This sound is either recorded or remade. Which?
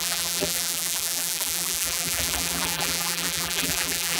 remade